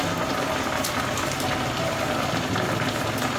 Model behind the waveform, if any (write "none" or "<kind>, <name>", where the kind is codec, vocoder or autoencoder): none